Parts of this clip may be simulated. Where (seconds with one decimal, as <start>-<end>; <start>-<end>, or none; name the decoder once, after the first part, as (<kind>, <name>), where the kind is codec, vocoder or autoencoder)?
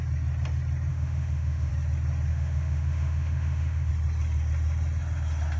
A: 0.9-1.7 (autoencoder, DAC-VAE); 2.3-3.9